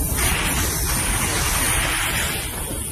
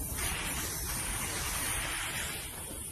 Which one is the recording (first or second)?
first